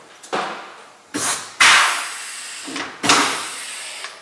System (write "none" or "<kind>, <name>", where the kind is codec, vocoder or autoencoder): none